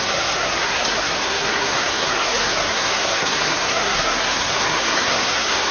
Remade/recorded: remade